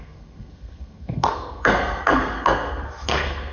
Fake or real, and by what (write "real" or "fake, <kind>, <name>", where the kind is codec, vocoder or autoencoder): fake, codec, SNAC